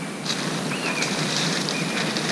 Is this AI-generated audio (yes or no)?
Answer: no